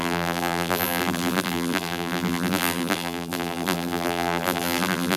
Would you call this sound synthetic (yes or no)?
yes